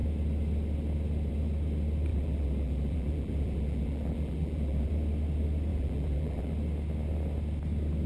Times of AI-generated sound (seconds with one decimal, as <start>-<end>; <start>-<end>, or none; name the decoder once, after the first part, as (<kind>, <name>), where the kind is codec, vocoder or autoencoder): 2.1-4.9 (vocoder, BigVGAN v2); 5.7-6.5

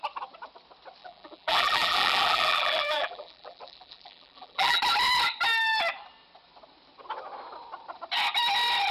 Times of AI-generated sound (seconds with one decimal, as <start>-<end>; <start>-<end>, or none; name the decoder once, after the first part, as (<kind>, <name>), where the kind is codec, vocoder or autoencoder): 1.0-4.8 (vocoder, BigVGAN v2)